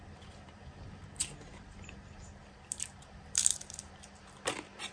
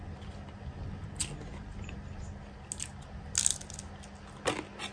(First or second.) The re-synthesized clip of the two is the first